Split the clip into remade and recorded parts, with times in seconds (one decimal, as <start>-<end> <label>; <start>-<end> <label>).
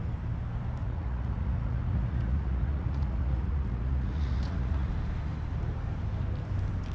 0.0-0.8 recorded; 0.8-4.9 remade; 4.9-6.9 recorded